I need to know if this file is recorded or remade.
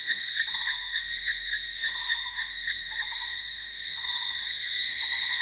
remade